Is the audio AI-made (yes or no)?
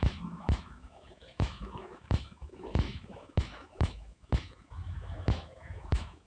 yes